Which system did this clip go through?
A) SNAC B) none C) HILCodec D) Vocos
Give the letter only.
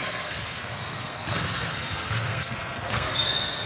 A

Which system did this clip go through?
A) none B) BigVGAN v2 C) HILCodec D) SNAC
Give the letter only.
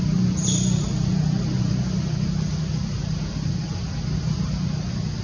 A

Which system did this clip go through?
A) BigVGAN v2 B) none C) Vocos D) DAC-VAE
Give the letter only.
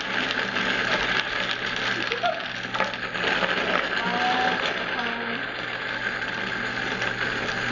B